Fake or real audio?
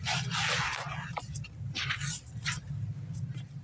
real